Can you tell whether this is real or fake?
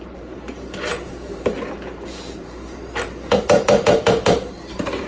fake